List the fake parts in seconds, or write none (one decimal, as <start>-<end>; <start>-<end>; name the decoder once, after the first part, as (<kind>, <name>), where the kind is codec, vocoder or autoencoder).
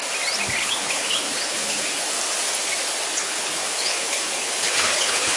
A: 0.6-2.0 (codec, HILCodec); 3.2-5.4